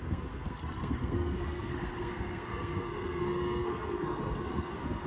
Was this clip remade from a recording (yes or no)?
yes